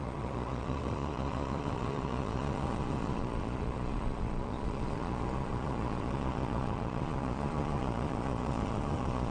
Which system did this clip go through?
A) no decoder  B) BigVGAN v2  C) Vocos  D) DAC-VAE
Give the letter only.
C